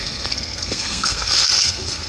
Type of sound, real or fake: fake